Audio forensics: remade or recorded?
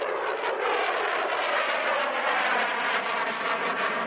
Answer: recorded